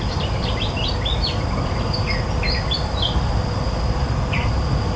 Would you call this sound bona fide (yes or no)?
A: yes